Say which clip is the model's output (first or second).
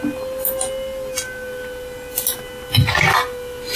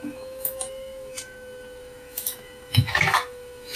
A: second